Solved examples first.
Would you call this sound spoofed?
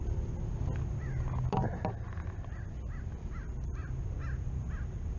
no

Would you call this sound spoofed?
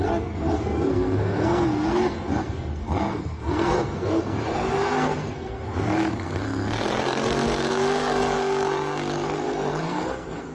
yes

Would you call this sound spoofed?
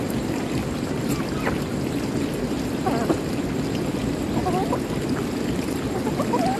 no